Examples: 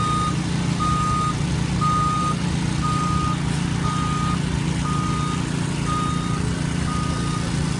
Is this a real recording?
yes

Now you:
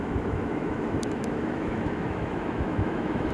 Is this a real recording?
no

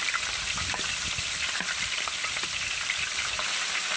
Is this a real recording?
no